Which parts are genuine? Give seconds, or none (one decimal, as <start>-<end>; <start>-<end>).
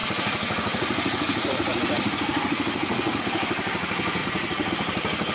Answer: 3.2-4.2; 4.7-5.3